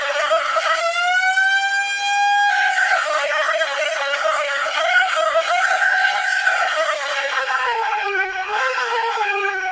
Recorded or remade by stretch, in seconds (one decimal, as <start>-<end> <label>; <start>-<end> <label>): 0.0-0.8 remade; 0.8-2.5 recorded; 2.5-9.7 remade